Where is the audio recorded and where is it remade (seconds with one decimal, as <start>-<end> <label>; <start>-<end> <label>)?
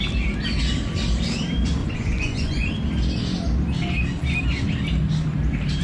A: 0.0-1.8 recorded; 1.8-2.7 remade; 2.7-5.8 recorded